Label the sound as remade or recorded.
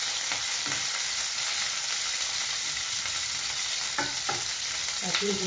remade